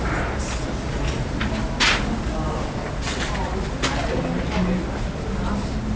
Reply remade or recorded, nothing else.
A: recorded